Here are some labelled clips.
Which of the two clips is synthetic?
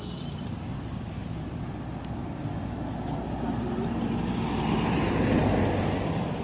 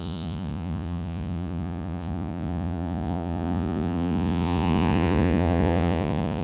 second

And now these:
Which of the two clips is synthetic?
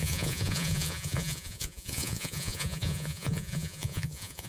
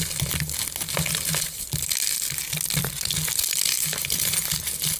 first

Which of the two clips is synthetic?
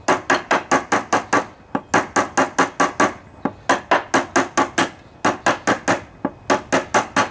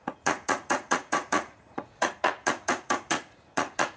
second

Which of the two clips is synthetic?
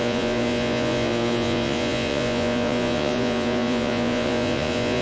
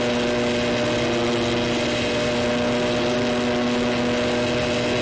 first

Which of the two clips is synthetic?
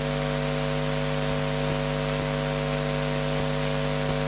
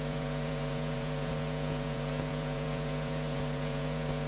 second